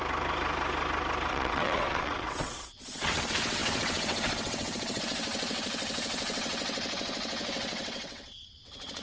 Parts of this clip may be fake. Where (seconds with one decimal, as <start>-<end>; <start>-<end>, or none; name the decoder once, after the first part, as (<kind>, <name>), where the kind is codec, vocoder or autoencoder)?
1.3-9.0 (vocoder, WaveNeXt)